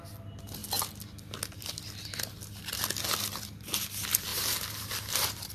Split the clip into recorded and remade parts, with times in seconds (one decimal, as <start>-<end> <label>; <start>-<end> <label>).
0.0-4.3 recorded; 4.3-5.5 remade